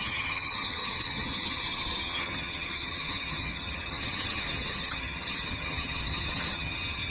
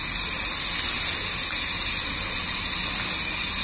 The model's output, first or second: first